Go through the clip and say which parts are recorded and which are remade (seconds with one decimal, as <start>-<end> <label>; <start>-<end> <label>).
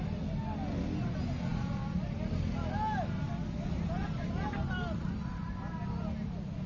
0.0-6.7 recorded